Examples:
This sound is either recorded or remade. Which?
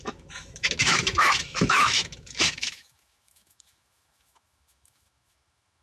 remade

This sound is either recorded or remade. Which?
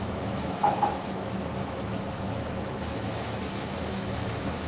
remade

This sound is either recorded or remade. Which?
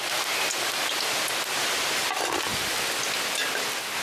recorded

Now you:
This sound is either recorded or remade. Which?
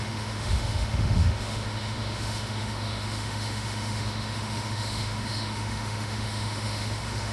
remade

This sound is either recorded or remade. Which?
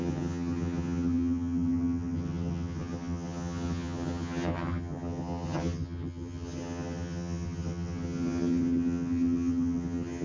remade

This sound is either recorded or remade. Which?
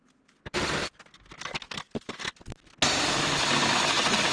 recorded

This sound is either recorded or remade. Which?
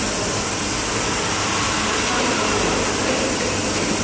recorded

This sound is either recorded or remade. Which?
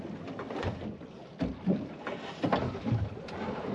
recorded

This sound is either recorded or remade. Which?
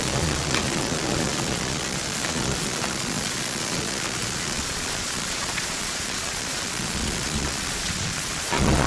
remade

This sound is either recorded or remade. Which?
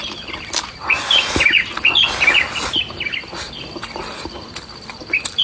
recorded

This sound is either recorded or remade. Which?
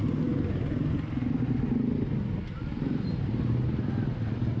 recorded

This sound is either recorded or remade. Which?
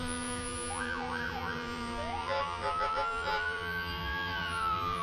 remade